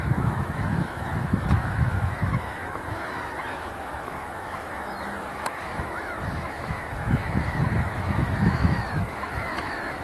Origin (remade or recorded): remade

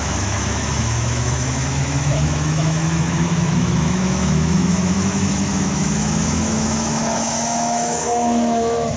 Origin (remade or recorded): remade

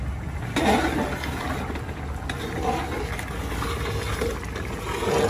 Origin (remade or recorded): recorded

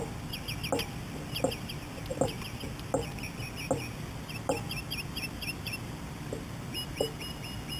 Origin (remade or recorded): recorded